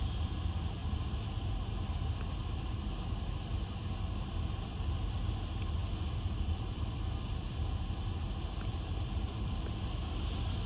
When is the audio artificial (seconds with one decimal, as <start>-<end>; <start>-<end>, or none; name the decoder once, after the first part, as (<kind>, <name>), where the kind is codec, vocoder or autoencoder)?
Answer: none